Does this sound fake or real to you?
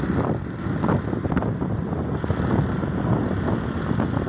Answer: real